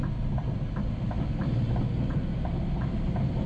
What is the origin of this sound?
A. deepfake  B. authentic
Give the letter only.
B